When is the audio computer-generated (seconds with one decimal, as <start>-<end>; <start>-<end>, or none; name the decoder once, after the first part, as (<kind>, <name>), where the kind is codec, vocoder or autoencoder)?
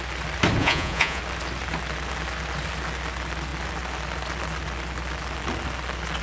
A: 0.6-1.2 (vocoder, Vocos)